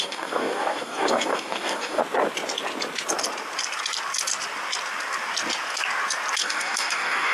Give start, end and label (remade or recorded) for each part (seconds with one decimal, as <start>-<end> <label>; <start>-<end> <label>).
0.0-2.0 remade; 2.0-6.4 recorded; 6.4-7.3 remade